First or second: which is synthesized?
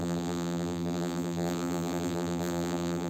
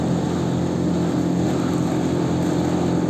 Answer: first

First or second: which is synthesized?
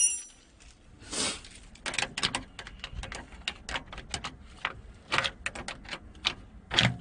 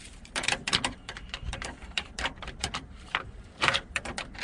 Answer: second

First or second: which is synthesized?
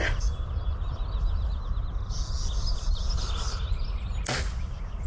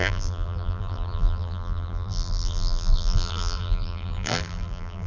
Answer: second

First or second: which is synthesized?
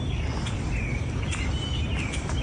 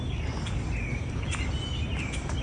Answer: first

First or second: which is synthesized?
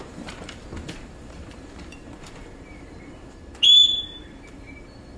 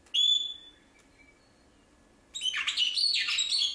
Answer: first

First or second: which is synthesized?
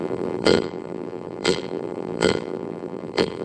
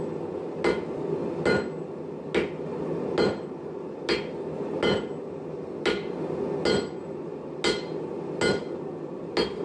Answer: first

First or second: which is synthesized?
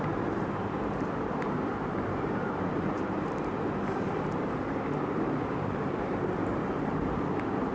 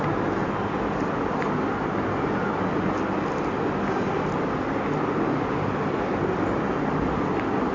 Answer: first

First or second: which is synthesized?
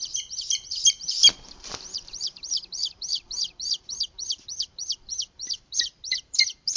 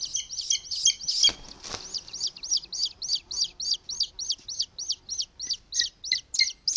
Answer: first